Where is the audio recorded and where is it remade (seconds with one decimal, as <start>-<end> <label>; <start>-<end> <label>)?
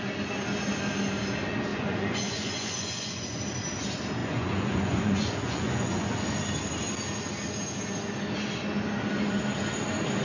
0.0-1.7 recorded; 1.7-3.4 remade; 3.4-4.2 recorded; 4.2-6.1 remade; 6.1-10.2 recorded